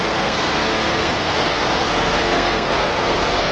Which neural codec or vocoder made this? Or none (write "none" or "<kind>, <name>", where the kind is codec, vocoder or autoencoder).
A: codec, SNAC